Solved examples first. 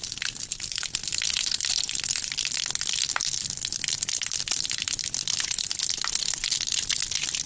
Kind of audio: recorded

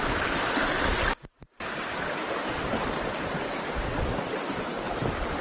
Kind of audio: recorded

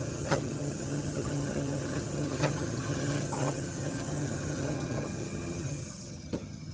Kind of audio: remade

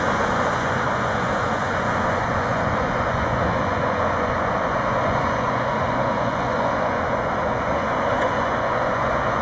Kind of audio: remade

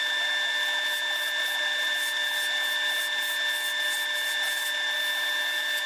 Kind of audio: recorded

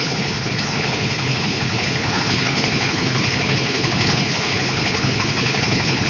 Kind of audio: remade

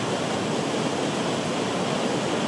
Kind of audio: recorded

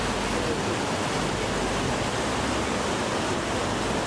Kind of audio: recorded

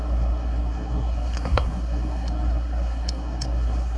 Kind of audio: remade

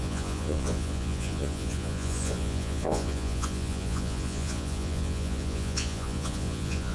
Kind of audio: remade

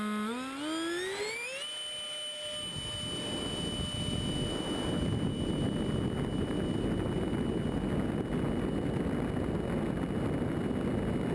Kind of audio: recorded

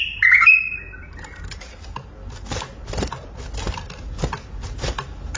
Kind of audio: recorded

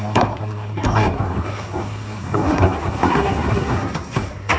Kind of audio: remade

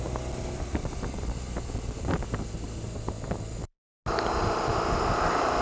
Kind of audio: recorded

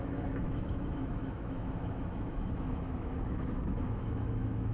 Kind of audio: remade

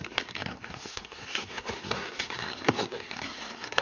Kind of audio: remade